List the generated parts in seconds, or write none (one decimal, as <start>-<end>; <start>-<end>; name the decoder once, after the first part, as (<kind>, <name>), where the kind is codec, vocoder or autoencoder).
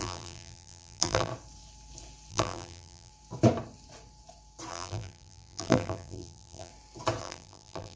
0.0-1.3 (vocoder, BigVGAN v2); 2.3-3.1; 4.7-6.7; 7.2-8.0